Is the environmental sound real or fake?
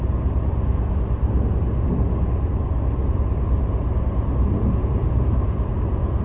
real